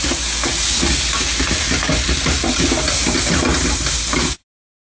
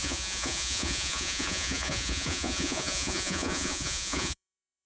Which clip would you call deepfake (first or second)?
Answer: second